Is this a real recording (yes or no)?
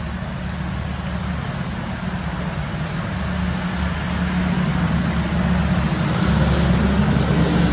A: yes